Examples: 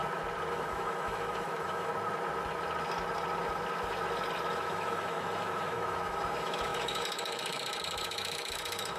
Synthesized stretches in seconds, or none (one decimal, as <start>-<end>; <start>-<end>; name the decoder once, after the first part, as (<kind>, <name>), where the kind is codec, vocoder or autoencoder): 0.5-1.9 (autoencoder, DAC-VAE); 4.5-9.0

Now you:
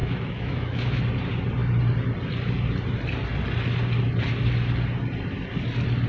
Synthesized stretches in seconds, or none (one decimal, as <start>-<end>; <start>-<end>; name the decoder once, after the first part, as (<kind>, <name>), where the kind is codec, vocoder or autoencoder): 0.0-1.0 (autoencoder, DAC-VAE)

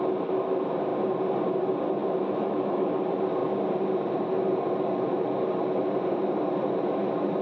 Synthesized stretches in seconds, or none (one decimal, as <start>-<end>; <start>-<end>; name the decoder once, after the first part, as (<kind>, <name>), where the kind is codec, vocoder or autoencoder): 2.0-3.0 (autoencoder, DAC-VAE)